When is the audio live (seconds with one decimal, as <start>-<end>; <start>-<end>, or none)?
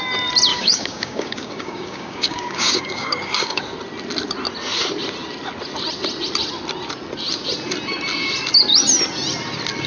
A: 0.0-0.5; 3.6-9.9